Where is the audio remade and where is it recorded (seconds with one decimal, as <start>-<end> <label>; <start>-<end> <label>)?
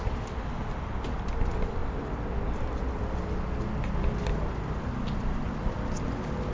0.0-6.5 recorded